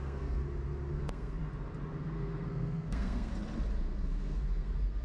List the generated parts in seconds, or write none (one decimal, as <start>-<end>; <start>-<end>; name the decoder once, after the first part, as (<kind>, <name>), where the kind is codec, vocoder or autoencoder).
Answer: 0.0-0.4 (codec, SNAC); 0.9-1.4; 2.0-3.3; 3.8-5.0